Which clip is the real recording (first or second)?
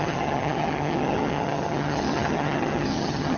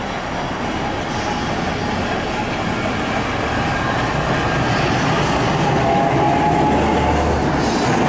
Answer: second